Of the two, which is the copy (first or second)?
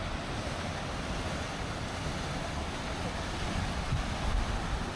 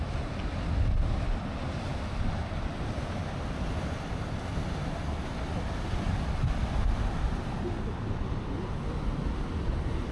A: first